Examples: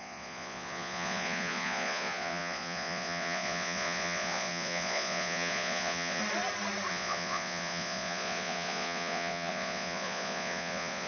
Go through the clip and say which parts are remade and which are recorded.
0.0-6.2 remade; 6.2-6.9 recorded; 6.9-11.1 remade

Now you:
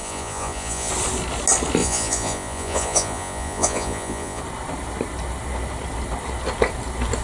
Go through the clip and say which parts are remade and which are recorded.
0.0-0.9 remade; 0.9-1.8 recorded; 1.8-4.4 remade; 4.4-7.2 recorded

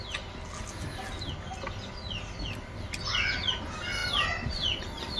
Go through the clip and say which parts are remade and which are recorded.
0.0-5.2 recorded

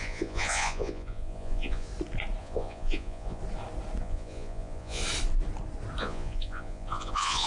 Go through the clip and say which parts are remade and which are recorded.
0.0-1.9 remade; 1.9-2.4 recorded; 2.4-3.4 remade; 3.4-4.0 recorded; 4.0-5.0 remade; 5.0-6.0 recorded; 6.0-7.5 remade

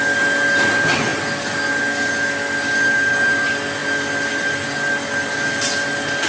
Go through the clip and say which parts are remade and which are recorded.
0.0-6.3 recorded